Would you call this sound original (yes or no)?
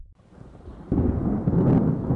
yes